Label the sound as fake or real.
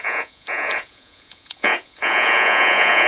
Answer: fake